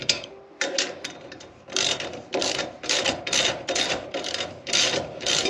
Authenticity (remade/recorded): remade